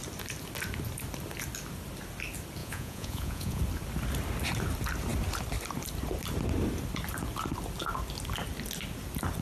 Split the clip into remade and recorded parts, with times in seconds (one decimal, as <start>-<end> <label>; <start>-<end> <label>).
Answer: 0.0-2.6 recorded; 2.6-3.6 remade; 3.6-9.4 recorded